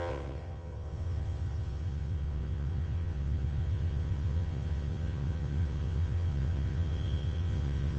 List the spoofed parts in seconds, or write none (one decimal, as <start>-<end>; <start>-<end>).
0.0-8.0